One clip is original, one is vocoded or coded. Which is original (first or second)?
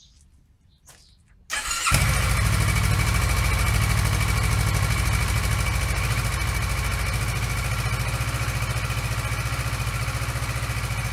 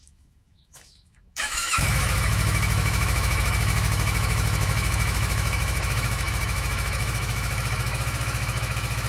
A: first